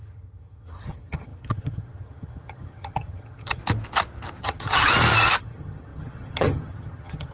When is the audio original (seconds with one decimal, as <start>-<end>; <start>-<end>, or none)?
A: 3.6-4.4; 4.9-5.4